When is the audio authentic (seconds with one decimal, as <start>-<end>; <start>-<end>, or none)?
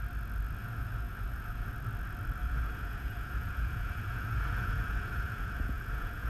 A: 0.0-0.6; 1.7-2.4